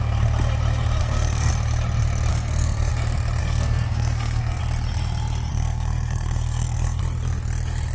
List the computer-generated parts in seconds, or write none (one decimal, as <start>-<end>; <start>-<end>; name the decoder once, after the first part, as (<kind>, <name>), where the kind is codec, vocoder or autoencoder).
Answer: 1.0-1.5 (codec, SNAC); 2.3-2.9; 3.4-4.6; 5.5-7.0